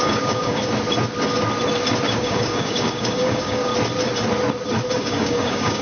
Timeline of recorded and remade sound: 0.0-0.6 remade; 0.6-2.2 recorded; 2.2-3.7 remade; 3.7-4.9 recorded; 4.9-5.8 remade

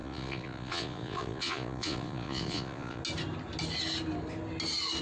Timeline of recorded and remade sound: 0.0-3.0 remade; 3.0-5.0 recorded

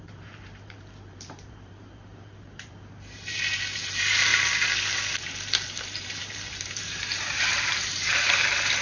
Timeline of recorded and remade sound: 0.0-4.3 remade; 4.3-5.2 recorded; 5.2-8.8 remade